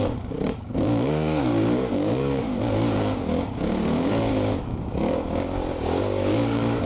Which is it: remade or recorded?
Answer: remade